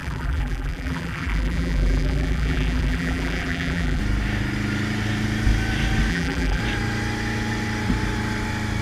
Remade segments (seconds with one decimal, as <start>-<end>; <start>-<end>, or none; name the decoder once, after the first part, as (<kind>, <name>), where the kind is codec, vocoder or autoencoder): 0.0-4.0 (vocoder, BigVGAN v2); 6.1-6.6